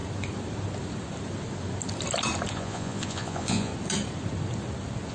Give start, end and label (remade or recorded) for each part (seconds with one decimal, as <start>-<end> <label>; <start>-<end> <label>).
0.0-2.5 recorded; 2.5-3.7 remade; 3.7-5.1 recorded